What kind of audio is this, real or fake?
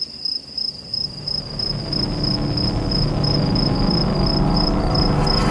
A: real